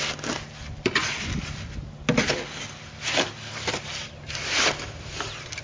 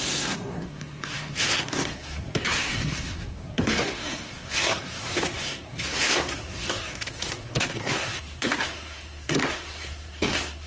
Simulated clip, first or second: second